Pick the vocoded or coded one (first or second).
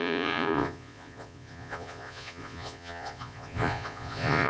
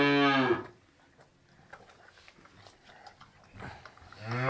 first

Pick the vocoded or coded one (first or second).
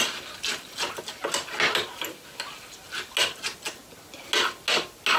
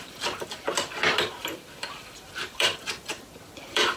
second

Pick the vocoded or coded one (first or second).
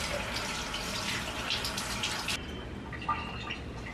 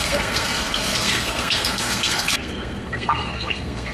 second